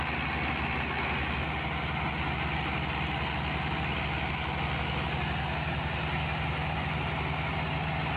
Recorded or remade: recorded